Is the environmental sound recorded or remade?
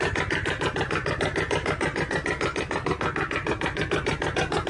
recorded